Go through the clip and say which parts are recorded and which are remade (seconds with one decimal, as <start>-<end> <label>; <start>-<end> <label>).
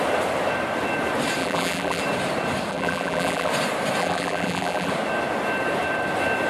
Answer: 0.0-1.4 recorded; 1.4-2.0 remade; 2.0-2.7 recorded; 2.7-3.5 remade; 3.5-4.0 recorded; 4.0-4.9 remade; 4.9-6.5 recorded